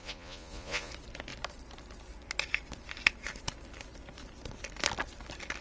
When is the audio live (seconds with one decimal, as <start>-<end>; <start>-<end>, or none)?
0.9-5.6